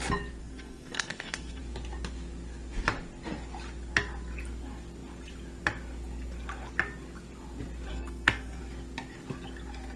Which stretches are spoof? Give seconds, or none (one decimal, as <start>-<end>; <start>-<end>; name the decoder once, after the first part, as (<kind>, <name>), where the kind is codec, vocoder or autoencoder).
0.4-1.6 (codec, SNAC); 7.9-8.6